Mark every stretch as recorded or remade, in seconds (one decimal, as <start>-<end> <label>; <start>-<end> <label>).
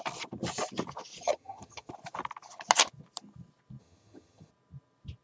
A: 0.0-1.2 recorded; 1.2-1.9 remade; 1.9-3.8 recorded; 3.8-4.5 remade; 4.5-5.2 recorded